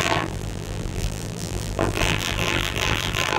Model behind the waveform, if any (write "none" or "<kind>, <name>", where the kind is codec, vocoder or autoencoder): vocoder, BigVGAN v2